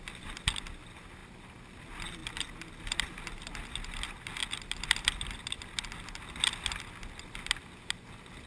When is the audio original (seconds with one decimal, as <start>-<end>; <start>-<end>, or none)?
0.0-8.5